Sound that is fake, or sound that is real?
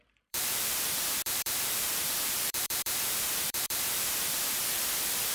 fake